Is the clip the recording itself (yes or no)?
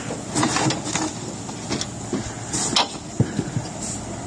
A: yes